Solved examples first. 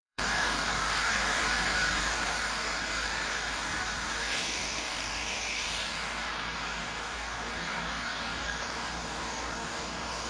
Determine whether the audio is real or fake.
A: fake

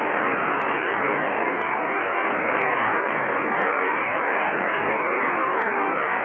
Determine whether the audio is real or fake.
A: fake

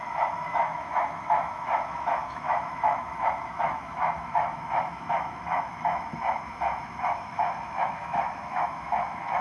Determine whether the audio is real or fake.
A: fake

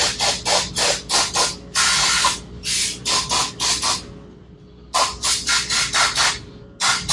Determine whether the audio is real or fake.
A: real